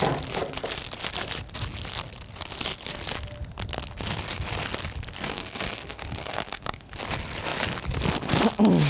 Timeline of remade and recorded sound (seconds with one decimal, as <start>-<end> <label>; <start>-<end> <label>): 0.0-5.3 recorded; 5.3-7.0 remade; 7.0-8.9 recorded